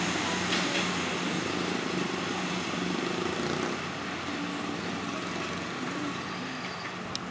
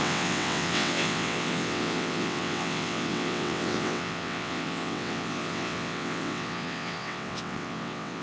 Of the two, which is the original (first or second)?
first